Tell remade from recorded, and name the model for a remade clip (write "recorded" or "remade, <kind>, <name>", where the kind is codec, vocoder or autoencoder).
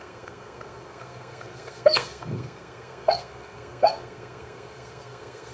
remade, codec, SNAC